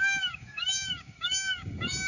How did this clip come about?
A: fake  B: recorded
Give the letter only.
A